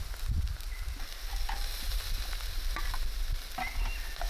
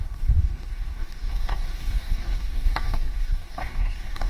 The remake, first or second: second